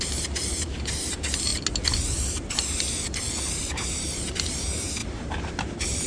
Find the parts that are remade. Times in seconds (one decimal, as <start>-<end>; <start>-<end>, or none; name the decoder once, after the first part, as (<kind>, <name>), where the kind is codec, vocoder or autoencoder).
0.0-1.5 (vocoder, BigVGAN v2); 3.5-6.1